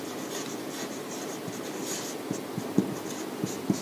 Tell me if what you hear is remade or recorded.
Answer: recorded